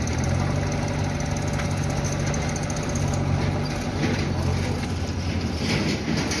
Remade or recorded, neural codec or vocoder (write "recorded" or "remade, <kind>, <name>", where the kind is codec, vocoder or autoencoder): recorded